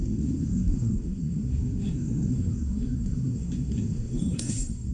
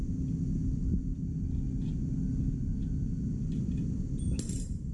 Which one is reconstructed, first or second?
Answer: first